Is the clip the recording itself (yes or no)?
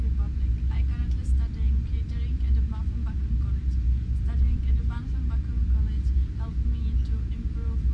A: yes